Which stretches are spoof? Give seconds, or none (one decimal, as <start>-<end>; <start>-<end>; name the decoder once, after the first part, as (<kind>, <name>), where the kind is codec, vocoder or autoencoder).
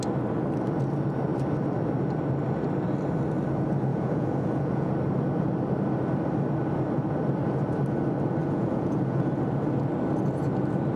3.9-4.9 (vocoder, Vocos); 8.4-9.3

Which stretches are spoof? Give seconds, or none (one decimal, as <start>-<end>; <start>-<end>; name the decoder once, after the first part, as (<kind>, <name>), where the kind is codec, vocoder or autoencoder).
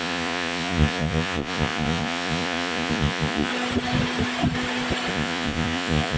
0.0-3.5 (vocoder, Vocos); 5.1-6.2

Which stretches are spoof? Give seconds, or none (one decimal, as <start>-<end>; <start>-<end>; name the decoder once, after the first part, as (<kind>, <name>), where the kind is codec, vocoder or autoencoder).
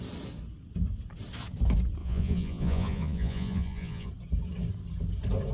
2.0-4.1 (vocoder, Vocos)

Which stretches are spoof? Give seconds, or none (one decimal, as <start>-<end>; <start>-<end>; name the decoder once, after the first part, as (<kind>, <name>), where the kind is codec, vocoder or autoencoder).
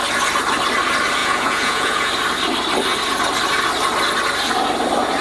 1.2-2.1 (vocoder, Vocos)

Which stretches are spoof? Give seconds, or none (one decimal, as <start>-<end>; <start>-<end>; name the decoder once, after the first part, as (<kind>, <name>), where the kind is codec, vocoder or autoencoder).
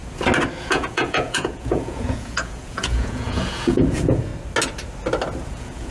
0.6-4.3 (vocoder, Vocos); 5.5-5.9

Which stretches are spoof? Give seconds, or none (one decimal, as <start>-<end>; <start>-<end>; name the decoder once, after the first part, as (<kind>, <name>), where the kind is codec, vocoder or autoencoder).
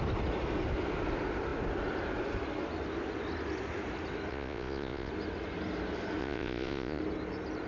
4.3-5.1 (vocoder, Vocos); 6.2-7.0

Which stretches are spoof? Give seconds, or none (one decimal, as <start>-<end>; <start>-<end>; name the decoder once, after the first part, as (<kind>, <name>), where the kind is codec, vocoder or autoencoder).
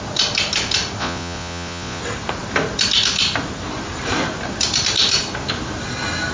1.0-2.0 (vocoder, Vocos)